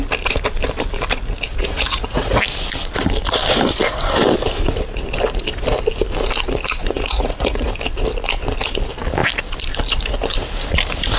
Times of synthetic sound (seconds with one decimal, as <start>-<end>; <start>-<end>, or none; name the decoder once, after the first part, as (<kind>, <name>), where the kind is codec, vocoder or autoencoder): 1.5-2.4 (vocoder, Vocos); 6.8-7.7